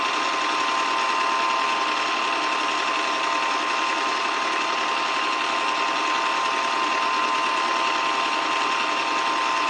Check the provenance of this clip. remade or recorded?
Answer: recorded